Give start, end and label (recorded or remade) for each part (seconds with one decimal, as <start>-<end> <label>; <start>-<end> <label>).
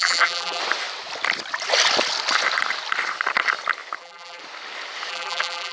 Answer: 0.0-0.6 remade; 0.6-4.0 recorded; 4.0-4.4 remade; 4.4-5.1 recorded; 5.1-5.7 remade